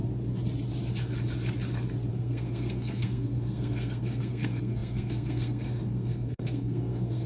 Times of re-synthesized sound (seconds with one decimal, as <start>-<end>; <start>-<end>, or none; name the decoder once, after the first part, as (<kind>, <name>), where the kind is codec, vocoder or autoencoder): 2.1-7.3 (codec, SNAC)